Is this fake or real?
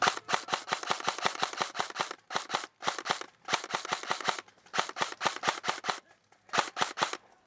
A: real